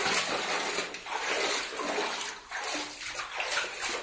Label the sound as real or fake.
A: real